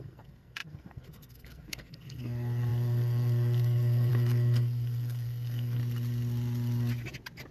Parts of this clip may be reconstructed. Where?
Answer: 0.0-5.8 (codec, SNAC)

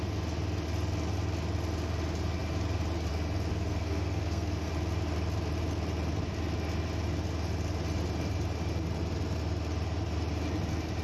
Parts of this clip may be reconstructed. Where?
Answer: 3.5-4.7 (codec, SNAC)

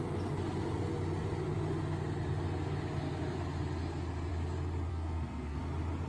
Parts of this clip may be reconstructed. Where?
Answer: 4.9-5.6 (codec, SNAC)